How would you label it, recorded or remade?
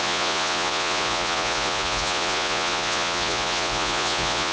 remade